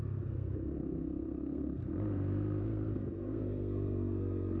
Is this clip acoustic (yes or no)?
no